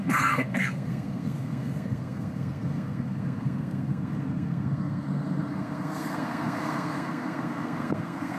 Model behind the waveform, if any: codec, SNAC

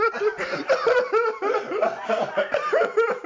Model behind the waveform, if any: none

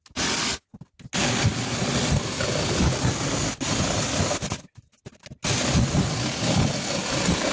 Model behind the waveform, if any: none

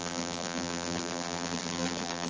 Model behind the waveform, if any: vocoder, BigVGAN v2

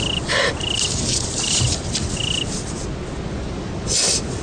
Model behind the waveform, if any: none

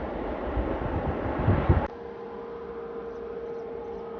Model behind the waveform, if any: none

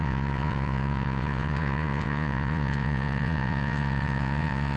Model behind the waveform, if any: vocoder, Vocos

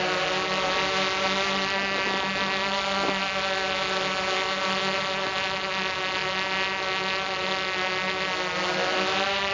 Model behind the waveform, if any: none